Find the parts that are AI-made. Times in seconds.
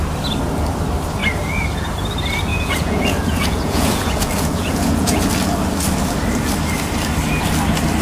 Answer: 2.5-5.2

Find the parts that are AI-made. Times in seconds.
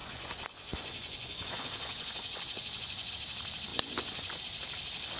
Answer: 0.0-3.1; 3.7-4.4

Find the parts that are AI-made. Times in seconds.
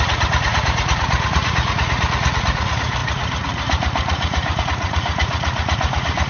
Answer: 0.0-6.3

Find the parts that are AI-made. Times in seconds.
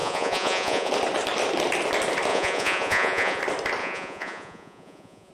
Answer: 0.0-0.9; 2.3-3.4; 3.8-5.3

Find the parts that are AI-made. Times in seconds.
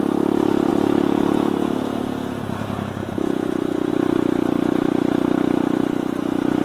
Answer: 0.7-3.9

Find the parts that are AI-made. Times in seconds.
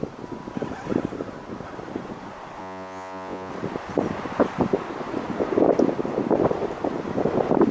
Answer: 2.6-3.5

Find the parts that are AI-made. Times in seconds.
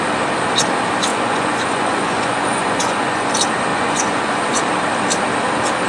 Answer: 1.1-3.3; 3.7-4.6